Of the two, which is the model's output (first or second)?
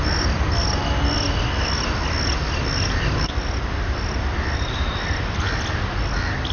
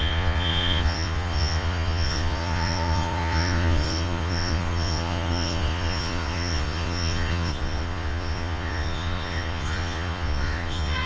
second